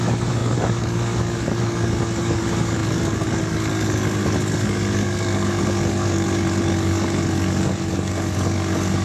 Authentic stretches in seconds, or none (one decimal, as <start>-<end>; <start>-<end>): none